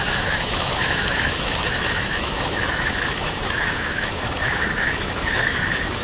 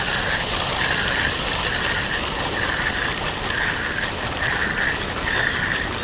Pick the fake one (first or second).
first